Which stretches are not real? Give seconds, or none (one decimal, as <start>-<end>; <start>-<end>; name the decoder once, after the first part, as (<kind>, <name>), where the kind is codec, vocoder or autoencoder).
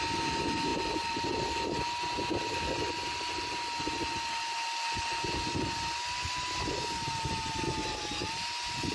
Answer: none